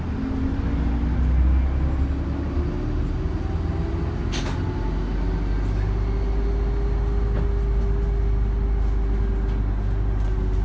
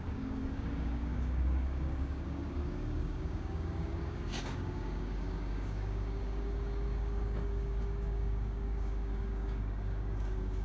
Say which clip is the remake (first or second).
second